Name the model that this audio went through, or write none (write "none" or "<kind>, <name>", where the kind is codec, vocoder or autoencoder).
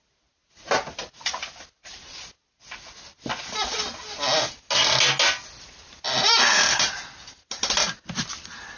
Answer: none